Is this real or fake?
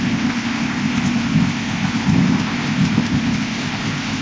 fake